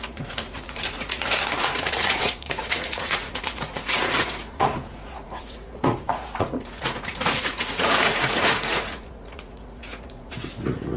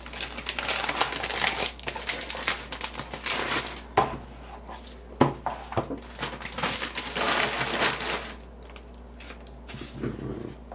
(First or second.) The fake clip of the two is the first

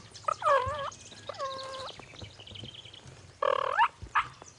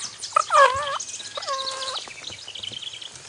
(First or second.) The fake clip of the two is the first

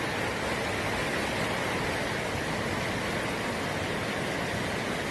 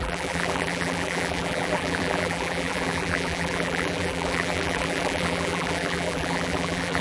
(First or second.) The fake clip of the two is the second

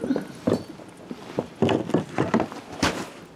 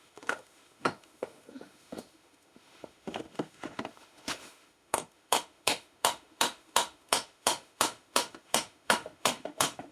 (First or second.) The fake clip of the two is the second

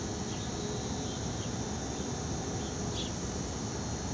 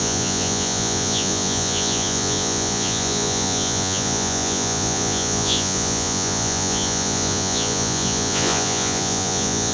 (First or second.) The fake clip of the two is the second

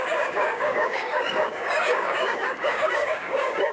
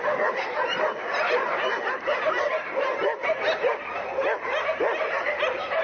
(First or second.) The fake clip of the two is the first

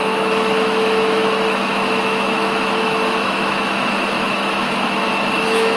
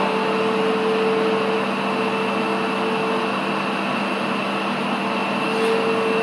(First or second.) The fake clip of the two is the first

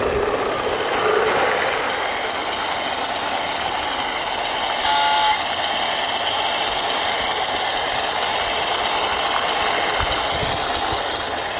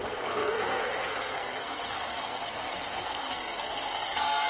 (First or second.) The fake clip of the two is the second